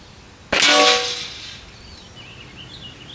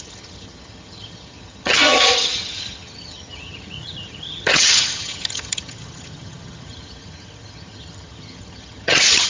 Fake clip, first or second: second